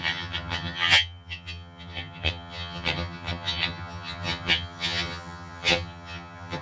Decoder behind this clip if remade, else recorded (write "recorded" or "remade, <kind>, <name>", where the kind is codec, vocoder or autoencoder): remade, vocoder, HiFi-GAN